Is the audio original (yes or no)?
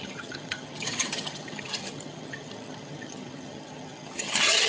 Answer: no